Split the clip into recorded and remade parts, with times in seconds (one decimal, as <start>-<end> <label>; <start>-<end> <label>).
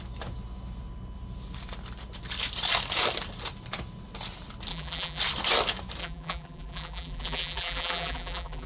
0.0-4.7 recorded; 4.7-5.2 remade; 5.2-6.0 recorded; 6.0-8.7 remade